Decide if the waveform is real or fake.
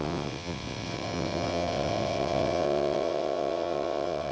fake